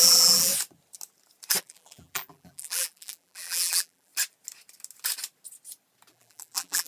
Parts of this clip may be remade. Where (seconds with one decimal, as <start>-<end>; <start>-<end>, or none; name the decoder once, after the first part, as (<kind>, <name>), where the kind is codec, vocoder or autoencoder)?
0.0-0.5 (vocoder, BigVGAN v2); 1.6-4.1; 6.1-6.9